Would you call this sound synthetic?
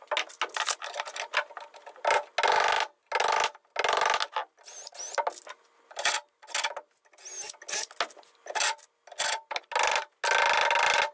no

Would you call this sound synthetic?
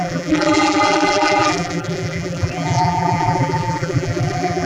yes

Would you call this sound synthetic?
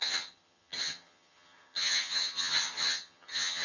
yes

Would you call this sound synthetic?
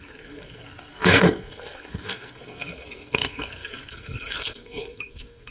yes